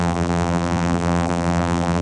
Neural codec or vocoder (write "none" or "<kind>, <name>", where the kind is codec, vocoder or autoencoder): vocoder, BigVGAN v2